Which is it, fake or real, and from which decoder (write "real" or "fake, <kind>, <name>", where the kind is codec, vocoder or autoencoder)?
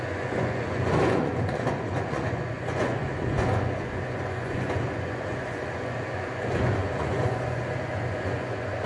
fake, vocoder, Vocos